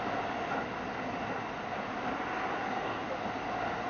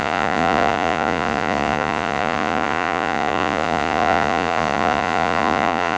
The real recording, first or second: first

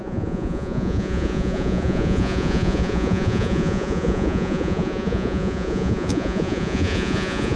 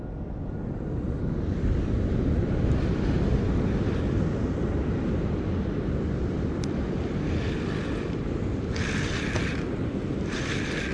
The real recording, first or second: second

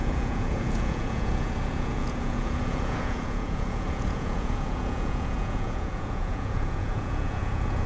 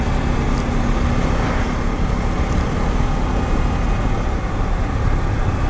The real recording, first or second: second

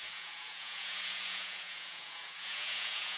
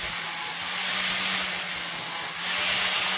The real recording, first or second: second